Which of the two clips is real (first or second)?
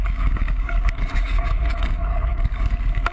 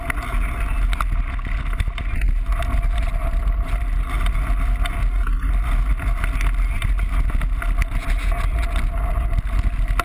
second